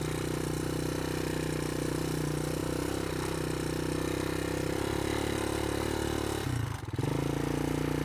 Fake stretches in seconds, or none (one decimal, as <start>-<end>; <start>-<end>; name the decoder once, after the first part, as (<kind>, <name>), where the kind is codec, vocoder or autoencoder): none